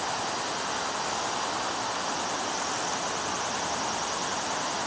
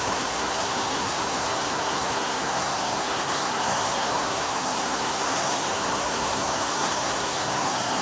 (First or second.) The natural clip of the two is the first